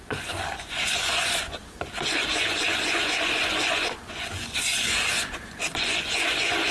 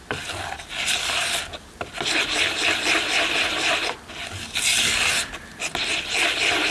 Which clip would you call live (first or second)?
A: second